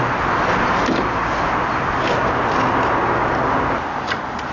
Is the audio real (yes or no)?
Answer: yes